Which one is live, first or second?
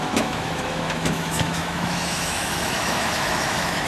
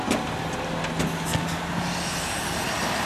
second